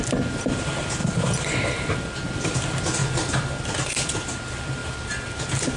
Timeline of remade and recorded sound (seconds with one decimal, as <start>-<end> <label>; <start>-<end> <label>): 0.0-1.0 recorded; 1.0-1.9 remade; 1.9-3.0 recorded; 3.0-3.6 remade; 3.6-5.8 recorded